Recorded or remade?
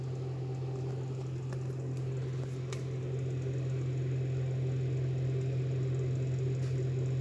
recorded